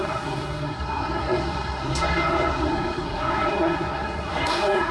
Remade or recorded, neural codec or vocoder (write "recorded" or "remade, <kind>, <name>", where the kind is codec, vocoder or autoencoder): remade, codec, SNAC